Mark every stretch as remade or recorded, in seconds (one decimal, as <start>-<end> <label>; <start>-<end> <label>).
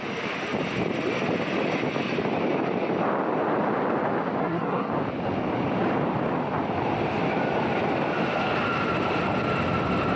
0.0-4.4 recorded; 4.4-4.9 remade; 4.9-10.2 recorded